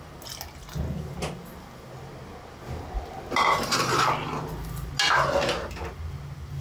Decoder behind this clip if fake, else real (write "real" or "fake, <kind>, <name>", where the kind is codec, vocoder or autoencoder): real